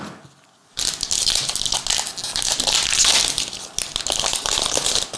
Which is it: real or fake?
real